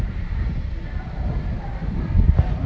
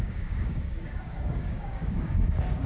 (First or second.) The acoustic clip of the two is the first